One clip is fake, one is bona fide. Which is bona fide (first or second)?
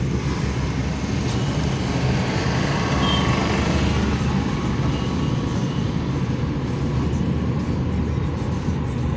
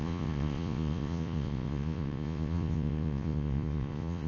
first